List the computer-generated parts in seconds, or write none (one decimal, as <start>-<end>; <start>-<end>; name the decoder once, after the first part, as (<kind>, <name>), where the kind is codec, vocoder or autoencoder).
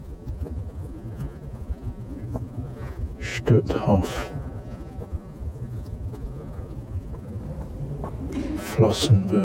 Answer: 0.0-7.4 (vocoder, Vocos); 8.6-9.4